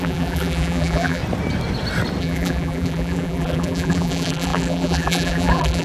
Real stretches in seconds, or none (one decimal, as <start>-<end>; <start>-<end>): 1.2-2.2